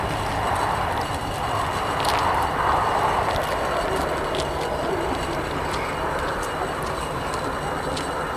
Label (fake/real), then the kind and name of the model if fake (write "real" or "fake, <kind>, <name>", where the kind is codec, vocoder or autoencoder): real